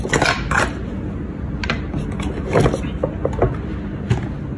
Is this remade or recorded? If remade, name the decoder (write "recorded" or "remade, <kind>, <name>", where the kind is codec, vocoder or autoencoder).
recorded